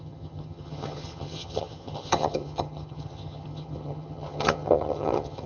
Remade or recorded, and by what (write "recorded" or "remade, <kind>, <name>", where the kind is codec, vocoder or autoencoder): remade, vocoder, HiFi-GAN